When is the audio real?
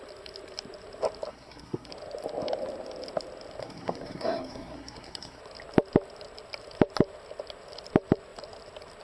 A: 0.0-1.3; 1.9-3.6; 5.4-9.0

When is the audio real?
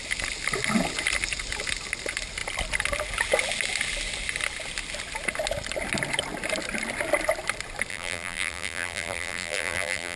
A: 0.0-7.9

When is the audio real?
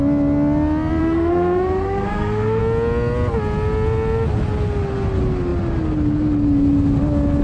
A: 0.0-1.0; 2.6-7.4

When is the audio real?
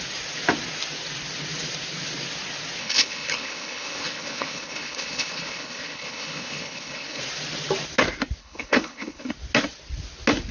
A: 0.0-2.8; 7.2-8.4; 9.3-10.5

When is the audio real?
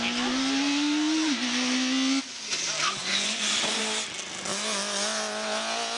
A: 0.0-3.0; 3.8-6.0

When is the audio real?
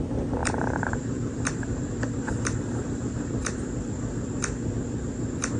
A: 0.0-0.4; 3.8-5.6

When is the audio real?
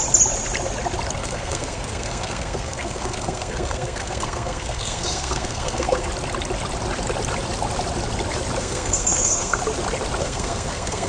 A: 0.0-1.2; 6.1-8.6; 9.6-10.2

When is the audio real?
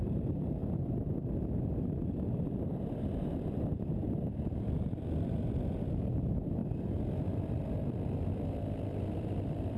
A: 0.6-1.8; 6.6-8.3